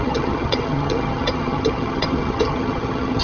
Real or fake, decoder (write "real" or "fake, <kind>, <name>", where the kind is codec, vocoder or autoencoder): fake, vocoder, HiFi-GAN